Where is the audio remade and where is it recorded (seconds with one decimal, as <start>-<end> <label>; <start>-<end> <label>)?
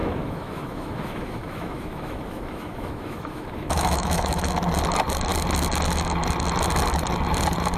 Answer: 0.0-4.5 remade; 4.5-7.8 recorded